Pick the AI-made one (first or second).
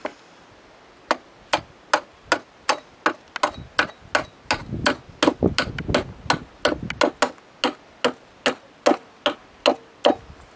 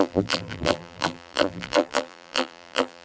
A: second